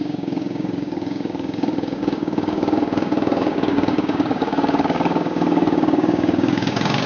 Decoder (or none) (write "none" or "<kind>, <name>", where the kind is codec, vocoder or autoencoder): codec, DAC